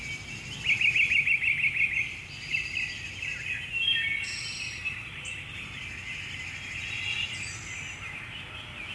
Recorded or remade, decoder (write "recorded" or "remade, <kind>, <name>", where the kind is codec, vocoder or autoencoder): recorded